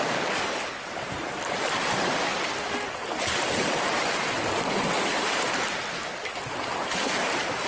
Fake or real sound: real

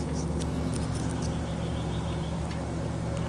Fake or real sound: real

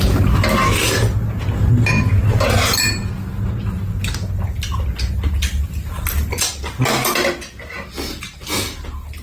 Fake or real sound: real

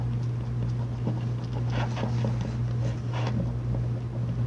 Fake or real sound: real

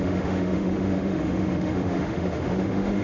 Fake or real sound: fake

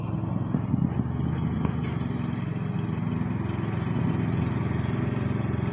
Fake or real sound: real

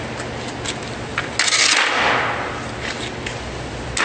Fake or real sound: real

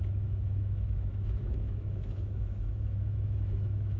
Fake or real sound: fake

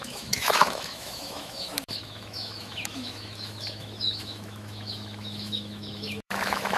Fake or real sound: fake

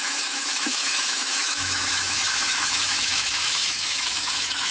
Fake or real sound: fake